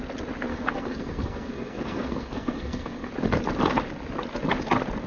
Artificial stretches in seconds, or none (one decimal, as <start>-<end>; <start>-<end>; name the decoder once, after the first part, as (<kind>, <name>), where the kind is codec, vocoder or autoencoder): 0.5-3.1 (codec, SNAC)